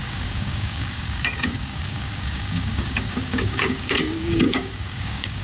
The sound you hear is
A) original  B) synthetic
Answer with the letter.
B